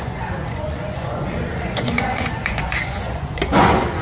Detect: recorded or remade remade